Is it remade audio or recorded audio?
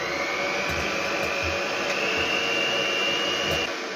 recorded